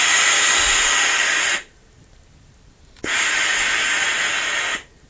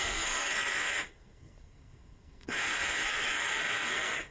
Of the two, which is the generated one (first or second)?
second